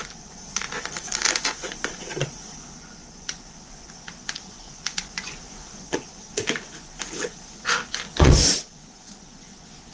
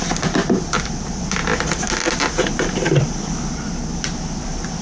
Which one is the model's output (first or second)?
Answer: first